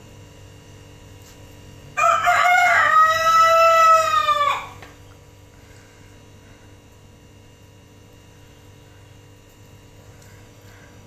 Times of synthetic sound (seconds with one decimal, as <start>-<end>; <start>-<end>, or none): 2.2-3.4